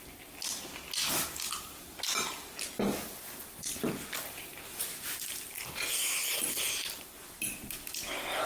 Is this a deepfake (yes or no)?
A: no